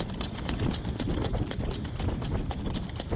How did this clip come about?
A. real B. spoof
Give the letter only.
A